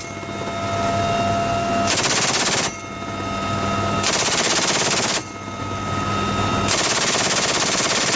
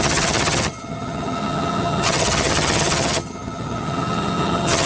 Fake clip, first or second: second